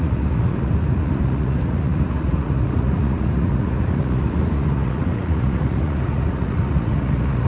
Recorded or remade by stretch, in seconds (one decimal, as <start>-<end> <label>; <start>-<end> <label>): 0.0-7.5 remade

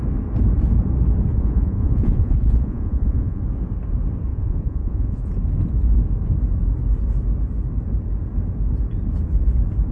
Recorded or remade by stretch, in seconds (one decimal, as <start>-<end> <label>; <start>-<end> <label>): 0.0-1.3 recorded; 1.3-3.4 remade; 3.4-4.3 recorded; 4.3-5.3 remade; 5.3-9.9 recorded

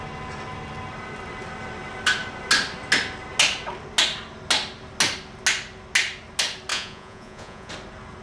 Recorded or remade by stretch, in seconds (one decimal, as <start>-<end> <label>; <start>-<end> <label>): 0.0-6.7 recorded; 6.7-7.7 remade; 7.7-8.2 recorded

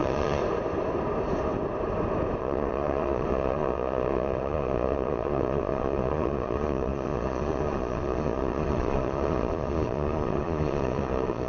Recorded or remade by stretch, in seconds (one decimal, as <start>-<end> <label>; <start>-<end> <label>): 0.0-0.4 remade; 0.4-2.4 recorded; 2.4-11.5 remade

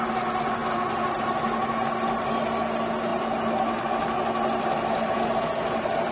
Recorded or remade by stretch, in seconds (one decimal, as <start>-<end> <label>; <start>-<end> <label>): 0.0-6.1 recorded